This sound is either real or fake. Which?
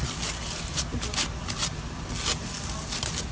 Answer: fake